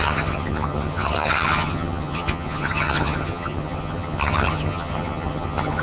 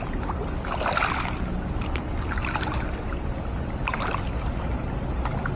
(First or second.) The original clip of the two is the second